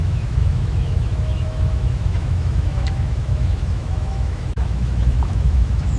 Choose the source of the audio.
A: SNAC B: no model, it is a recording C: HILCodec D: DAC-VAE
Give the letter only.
D